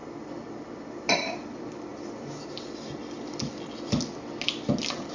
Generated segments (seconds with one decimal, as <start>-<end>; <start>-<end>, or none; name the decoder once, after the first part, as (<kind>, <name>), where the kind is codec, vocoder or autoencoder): none